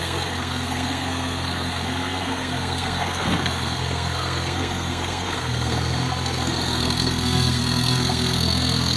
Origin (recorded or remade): remade